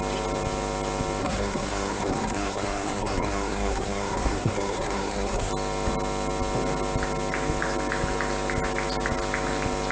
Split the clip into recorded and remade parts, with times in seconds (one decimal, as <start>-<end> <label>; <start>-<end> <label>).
0.0-1.2 recorded; 1.2-5.5 remade; 5.5-9.9 recorded